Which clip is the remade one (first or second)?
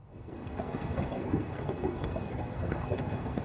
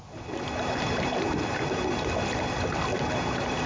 first